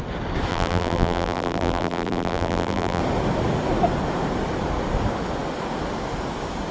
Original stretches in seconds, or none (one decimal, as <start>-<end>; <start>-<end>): 0.0-0.5; 3.0-6.7